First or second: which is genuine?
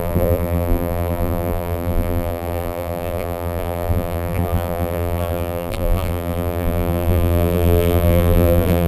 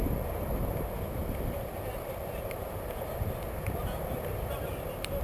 second